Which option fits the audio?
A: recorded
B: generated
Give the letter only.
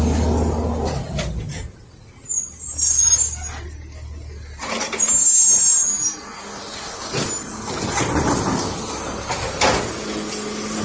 A